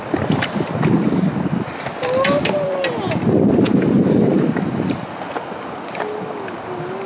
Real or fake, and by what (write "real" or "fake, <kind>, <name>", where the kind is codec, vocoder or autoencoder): real